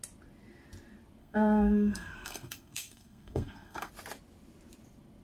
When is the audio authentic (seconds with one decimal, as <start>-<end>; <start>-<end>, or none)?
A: 0.0-1.2; 3.9-5.2